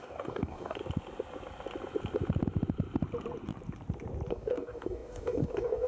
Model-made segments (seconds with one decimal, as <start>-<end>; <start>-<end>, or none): 0.0-0.8; 4.3-5.9